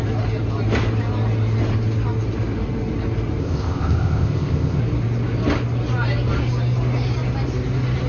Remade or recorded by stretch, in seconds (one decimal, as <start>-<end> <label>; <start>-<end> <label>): 0.0-3.4 recorded; 3.4-4.8 remade; 4.8-8.1 recorded